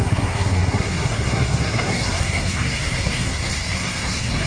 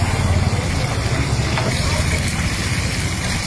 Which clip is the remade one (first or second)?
first